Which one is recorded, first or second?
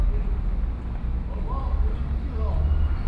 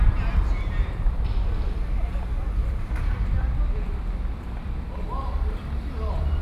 first